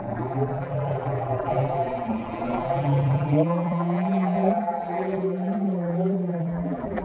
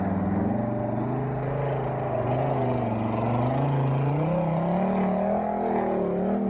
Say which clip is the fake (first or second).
first